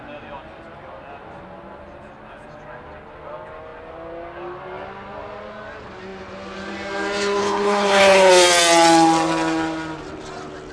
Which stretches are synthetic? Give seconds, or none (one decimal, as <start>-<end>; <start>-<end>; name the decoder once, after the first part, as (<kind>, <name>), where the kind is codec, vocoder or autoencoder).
7.4-8.3 (codec, HILCodec)